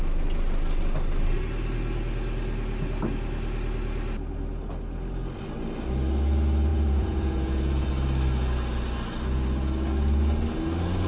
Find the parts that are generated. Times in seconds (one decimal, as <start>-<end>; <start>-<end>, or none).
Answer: 6.7-7.9